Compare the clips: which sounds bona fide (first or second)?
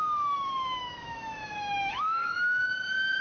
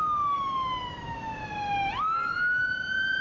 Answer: second